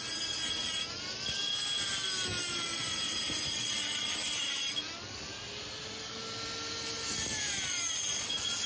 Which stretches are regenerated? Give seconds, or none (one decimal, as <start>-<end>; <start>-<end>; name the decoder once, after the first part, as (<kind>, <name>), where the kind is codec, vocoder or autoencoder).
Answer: none